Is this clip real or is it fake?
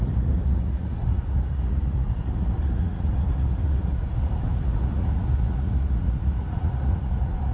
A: fake